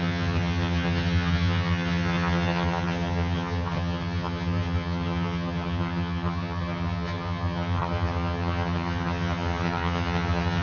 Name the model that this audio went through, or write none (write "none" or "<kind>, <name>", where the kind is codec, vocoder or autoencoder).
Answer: vocoder, HiFi-GAN